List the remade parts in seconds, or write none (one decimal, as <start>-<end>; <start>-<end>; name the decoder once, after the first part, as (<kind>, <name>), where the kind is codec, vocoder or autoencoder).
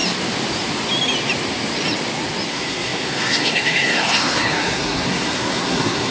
2.5-6.1 (codec, SNAC)